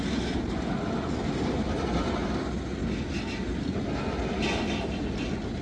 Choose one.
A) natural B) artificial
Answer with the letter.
A